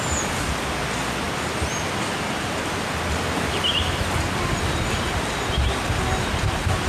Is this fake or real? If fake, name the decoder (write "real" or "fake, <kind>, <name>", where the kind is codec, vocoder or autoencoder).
real